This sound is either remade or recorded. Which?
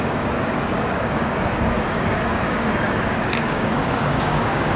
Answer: remade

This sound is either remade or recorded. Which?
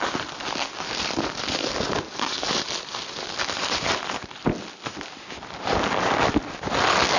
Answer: recorded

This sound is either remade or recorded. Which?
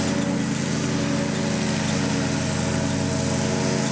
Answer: recorded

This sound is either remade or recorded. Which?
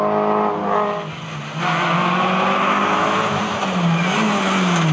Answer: recorded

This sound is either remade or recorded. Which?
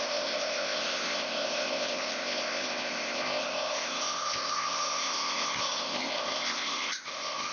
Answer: remade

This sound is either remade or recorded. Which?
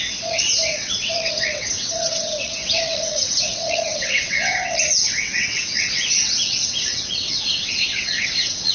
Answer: remade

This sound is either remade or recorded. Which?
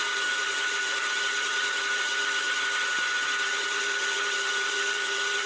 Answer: remade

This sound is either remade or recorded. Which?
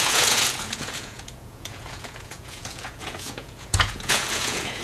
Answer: remade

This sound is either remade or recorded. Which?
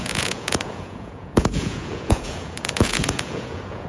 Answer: remade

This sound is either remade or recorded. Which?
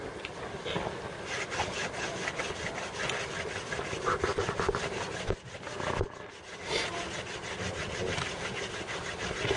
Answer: recorded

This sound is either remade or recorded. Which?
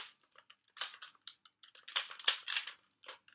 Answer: recorded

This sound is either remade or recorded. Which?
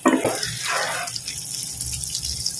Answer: recorded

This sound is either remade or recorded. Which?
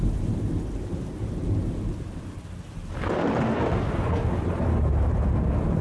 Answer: recorded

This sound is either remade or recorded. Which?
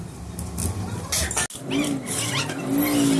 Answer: recorded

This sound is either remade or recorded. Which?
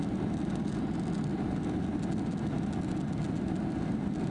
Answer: recorded